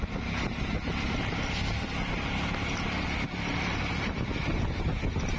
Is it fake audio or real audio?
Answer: real